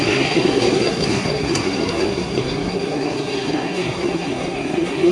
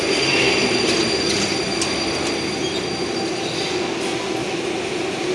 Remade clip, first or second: first